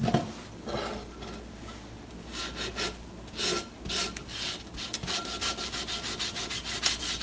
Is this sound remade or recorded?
recorded